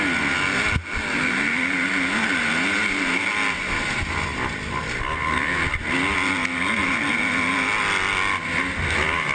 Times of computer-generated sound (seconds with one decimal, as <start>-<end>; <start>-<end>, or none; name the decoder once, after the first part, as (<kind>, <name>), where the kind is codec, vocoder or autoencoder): none